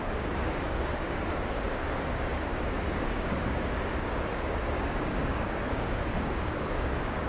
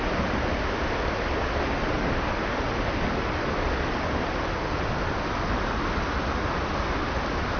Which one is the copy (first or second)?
first